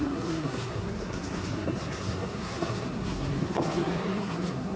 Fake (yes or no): yes